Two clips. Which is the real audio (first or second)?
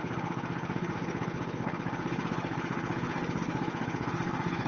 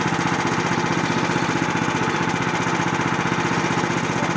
second